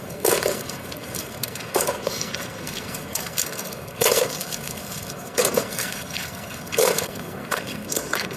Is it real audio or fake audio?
fake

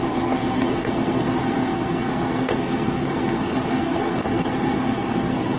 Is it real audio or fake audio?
fake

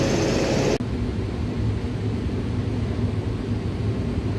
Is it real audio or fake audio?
real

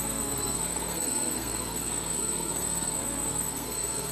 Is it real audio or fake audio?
fake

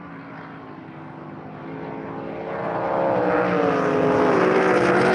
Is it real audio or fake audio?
real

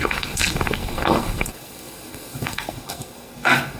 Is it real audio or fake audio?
fake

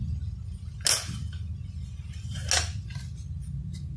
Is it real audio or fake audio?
real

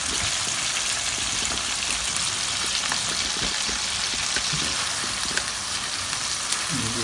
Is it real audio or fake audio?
real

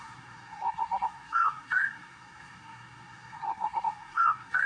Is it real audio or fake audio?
fake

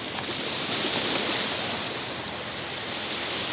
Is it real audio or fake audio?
real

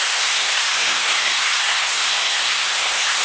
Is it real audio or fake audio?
fake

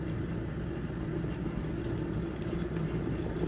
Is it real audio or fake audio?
real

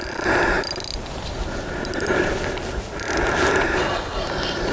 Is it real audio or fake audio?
real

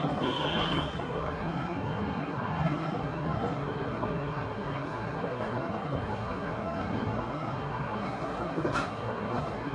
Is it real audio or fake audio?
fake